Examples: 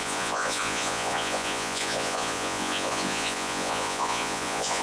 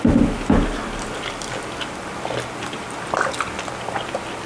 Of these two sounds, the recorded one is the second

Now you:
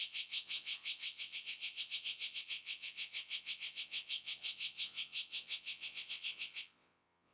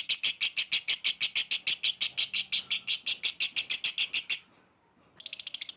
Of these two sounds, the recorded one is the second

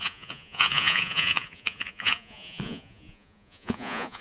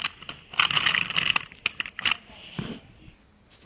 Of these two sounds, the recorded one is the second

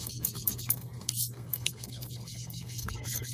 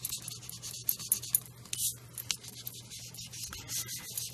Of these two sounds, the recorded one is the second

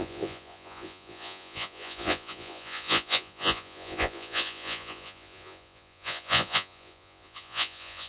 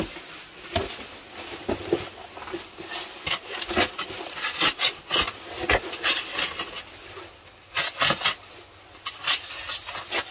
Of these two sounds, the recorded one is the second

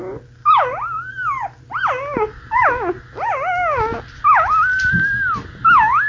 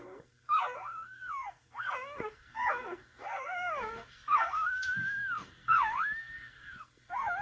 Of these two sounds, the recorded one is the first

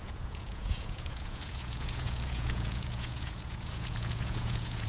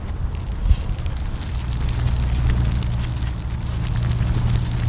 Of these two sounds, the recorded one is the second